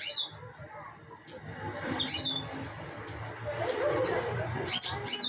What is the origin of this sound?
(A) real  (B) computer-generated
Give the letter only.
A